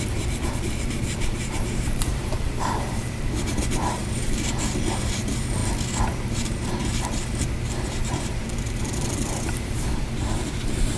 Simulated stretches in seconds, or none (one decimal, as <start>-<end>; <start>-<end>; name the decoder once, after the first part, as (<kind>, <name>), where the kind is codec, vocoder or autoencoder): 0.0-5.6 (vocoder, BigVGAN v2); 6.3-11.0